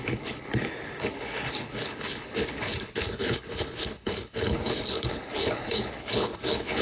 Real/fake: fake